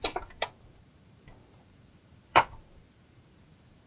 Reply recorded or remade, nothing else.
remade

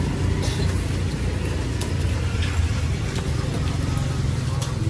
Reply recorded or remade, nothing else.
recorded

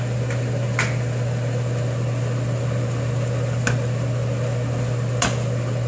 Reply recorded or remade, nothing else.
recorded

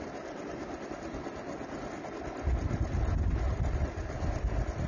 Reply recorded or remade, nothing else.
recorded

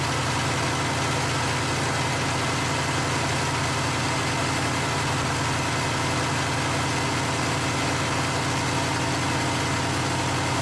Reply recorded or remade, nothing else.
recorded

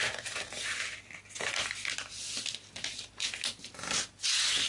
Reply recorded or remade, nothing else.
recorded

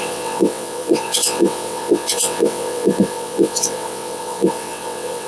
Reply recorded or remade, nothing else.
remade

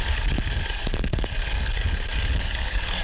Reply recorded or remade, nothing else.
remade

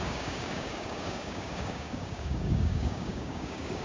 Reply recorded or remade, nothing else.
remade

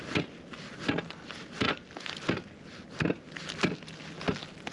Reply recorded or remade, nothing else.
recorded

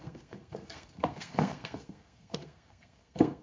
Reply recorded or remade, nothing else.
remade